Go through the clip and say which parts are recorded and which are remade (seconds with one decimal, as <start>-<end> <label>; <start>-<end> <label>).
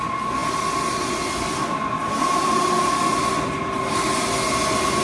0.0-5.0 recorded